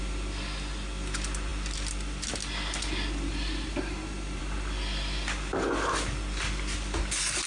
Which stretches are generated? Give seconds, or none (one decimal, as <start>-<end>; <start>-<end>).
none